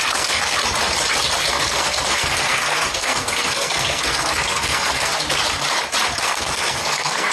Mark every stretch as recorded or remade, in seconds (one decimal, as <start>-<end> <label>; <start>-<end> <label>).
0.0-0.6 remade; 0.6-1.5 recorded; 1.5-5.1 remade; 5.1-6.2 recorded; 6.2-7.3 remade

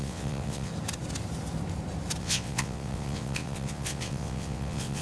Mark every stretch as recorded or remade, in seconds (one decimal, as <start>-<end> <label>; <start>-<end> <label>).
0.0-0.7 remade; 0.7-2.2 recorded; 2.2-5.0 remade